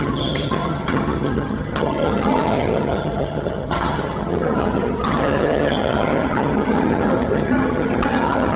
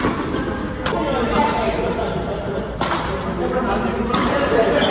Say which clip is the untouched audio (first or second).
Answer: second